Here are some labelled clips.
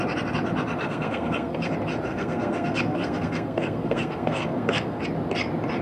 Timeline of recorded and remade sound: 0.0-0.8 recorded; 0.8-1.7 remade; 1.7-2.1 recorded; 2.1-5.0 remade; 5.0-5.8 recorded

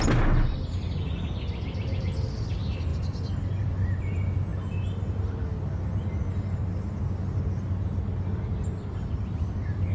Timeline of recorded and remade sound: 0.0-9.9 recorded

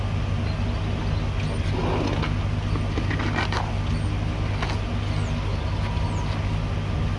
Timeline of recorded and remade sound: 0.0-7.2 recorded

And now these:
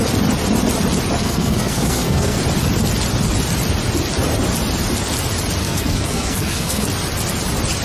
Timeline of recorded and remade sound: 0.0-1.2 recorded; 1.2-2.4 remade; 2.4-5.6 recorded; 5.6-6.9 remade; 6.9-7.8 recorded